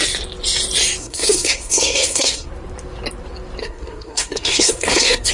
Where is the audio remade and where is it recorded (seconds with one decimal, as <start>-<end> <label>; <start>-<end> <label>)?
0.0-1.0 recorded; 1.0-2.5 remade; 2.5-3.6 recorded; 3.6-5.3 remade